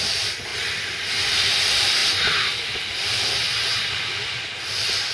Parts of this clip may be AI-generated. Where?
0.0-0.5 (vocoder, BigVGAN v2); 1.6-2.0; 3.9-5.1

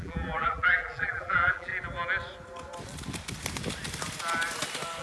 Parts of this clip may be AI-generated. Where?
0.0-1.7 (vocoder, BigVGAN v2)